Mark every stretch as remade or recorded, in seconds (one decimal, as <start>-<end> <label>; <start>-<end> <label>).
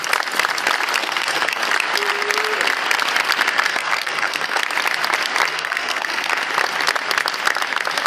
0.0-1.0 recorded; 1.0-1.6 remade; 1.6-3.7 recorded; 3.7-4.6 remade; 4.6-5.5 recorded; 5.5-6.3 remade; 6.3-8.1 recorded